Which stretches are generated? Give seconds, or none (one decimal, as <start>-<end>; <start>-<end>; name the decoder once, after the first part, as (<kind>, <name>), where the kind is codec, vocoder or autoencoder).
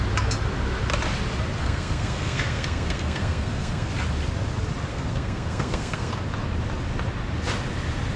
1.6-3.9 (codec, SNAC); 4.9-6.1